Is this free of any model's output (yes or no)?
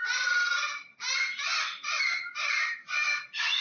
yes